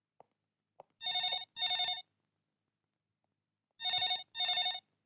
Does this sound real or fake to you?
real